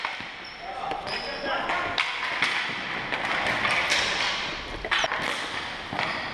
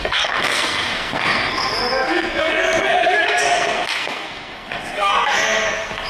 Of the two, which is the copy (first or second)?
second